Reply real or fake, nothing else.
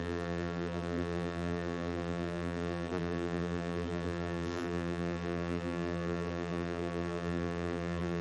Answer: fake